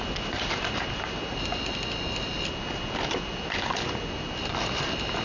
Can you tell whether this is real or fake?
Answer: real